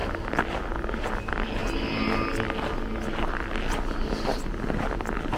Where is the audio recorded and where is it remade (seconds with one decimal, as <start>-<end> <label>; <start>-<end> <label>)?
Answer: 0.0-5.4 recorded